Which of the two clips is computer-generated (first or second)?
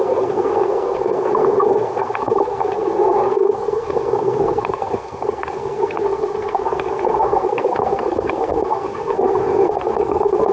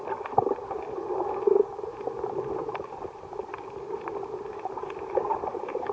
first